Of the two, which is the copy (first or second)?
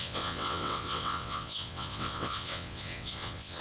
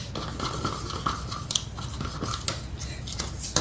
first